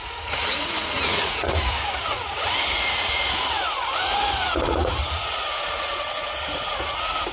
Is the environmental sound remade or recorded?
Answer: remade